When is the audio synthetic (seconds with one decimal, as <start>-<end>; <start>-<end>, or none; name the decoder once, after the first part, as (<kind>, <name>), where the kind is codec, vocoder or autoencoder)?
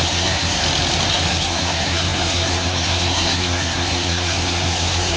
0.0-0.6 (codec, SNAC); 1.1-5.2